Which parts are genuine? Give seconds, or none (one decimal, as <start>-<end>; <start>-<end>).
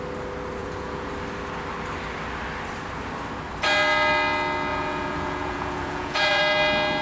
0.0-0.6; 1.1-4.7; 6.4-7.0